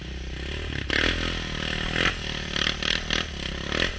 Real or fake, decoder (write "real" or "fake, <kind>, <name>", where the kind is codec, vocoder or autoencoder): real